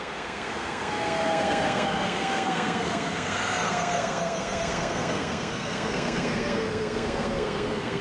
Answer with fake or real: fake